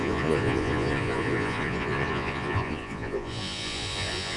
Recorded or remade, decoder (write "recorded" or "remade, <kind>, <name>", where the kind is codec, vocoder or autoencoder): remade, vocoder, Vocos